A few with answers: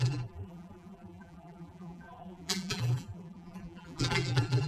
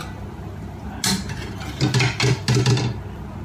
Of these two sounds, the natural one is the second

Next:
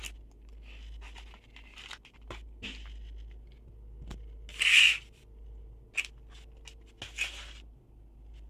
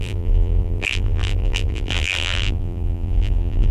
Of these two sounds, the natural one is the first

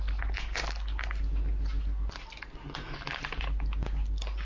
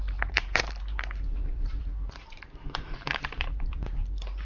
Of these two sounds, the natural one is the first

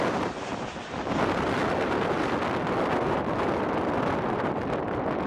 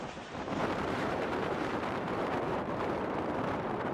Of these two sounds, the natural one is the first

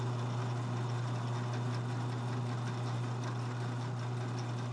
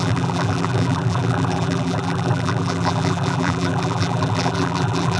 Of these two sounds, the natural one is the first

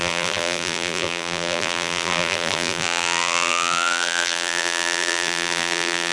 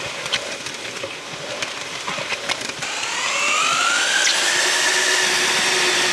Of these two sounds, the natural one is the second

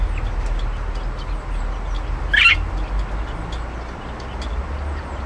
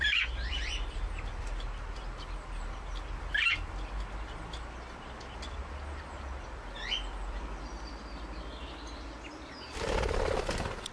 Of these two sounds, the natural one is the first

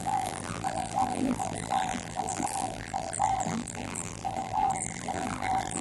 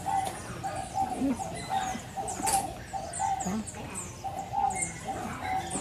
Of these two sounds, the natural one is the second